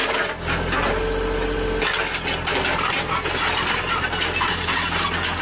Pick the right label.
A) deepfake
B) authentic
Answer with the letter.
B